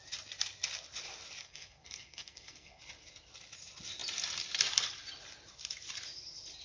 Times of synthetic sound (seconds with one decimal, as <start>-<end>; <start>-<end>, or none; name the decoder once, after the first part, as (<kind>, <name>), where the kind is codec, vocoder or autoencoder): 1.4-2.8 (codec, SNAC)